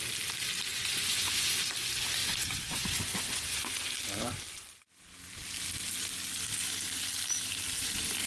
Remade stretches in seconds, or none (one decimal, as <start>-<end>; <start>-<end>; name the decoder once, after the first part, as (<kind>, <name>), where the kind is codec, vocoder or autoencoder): 0.7-1.7 (vocoder, Vocos); 2.2-3.9